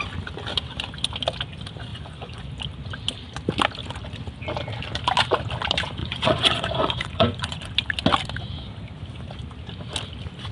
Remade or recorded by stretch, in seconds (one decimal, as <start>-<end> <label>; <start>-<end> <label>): 0.0-1.9 recorded; 1.9-2.5 remade; 2.5-6.0 recorded; 6.0-7.7 remade; 7.7-10.5 recorded